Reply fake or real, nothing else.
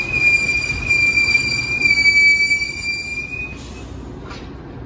real